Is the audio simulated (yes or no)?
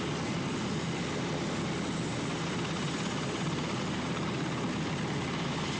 no